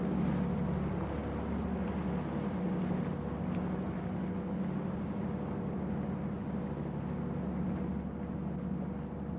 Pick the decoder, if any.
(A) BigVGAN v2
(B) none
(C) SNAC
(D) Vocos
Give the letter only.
B